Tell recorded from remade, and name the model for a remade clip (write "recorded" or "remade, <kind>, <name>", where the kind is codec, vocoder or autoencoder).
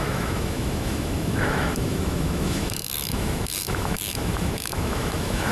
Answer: remade, autoencoder, DAC-VAE